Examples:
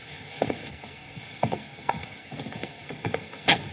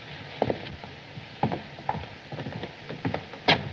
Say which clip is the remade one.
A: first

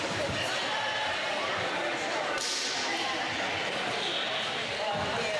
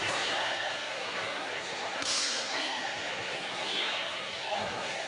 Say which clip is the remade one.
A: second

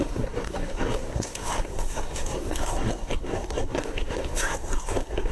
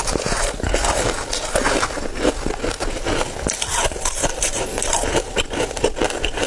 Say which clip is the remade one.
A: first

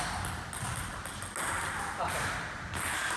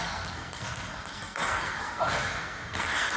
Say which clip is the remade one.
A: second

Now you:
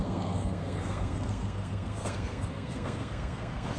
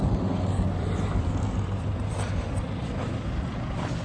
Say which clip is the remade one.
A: first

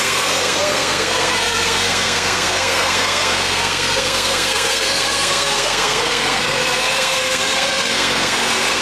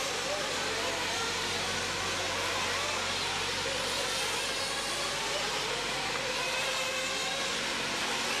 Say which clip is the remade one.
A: first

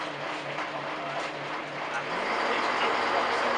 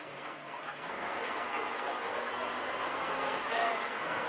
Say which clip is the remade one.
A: second